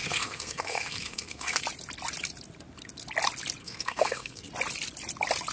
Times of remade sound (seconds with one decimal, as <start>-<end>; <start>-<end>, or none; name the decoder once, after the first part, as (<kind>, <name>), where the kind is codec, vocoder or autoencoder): 0.0-1.6 (codec, SNAC); 3.6-4.5